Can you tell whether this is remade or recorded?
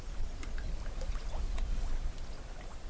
recorded